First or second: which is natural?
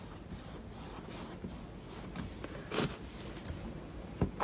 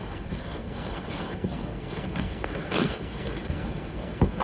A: first